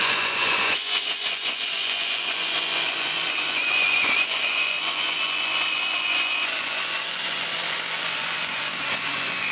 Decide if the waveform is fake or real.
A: fake